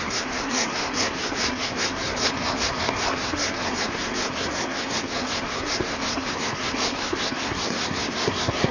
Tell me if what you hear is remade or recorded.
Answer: remade